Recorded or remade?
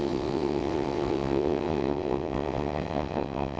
remade